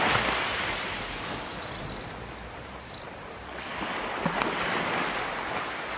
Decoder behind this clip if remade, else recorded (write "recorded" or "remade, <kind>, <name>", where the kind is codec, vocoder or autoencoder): recorded